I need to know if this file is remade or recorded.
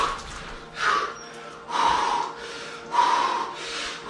recorded